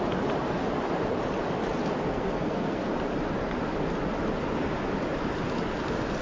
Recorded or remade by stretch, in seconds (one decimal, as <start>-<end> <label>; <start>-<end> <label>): 0.0-2.1 recorded; 2.1-2.9 remade; 2.9-6.2 recorded